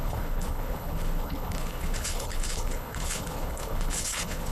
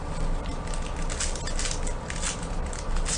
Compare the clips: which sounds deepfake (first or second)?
first